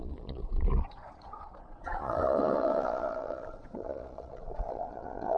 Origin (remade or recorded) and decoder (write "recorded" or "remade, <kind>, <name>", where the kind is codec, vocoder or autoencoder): remade, vocoder, Vocos